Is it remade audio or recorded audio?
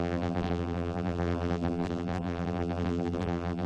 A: remade